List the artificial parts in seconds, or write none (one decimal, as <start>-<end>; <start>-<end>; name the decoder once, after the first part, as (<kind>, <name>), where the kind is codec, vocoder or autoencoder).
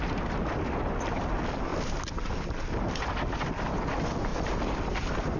4.3-4.9 (vocoder, BigVGAN v2)